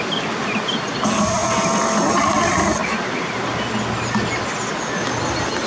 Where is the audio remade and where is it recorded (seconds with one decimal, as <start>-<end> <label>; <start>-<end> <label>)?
0.0-2.8 recorded; 2.8-3.3 remade; 3.3-5.7 recorded